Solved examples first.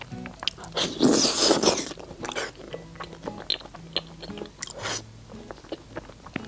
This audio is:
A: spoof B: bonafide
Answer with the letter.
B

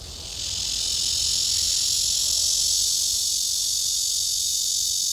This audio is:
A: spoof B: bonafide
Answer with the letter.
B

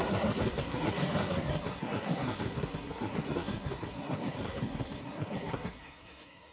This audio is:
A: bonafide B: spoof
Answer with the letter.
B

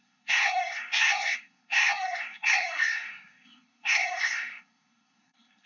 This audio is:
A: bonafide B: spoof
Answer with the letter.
B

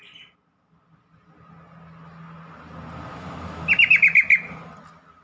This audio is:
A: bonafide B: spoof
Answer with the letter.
A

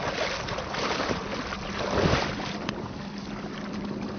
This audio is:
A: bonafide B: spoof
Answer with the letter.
A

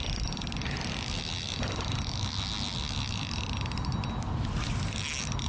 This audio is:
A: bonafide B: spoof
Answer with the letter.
A